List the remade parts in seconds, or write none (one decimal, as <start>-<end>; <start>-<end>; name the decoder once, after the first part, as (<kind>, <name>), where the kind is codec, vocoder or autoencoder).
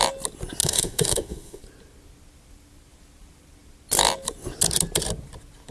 0.6-1.6 (autoencoder, DAC-VAE)